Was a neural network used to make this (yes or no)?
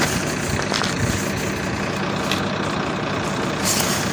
no